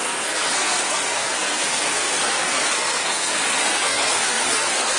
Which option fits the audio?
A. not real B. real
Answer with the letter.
A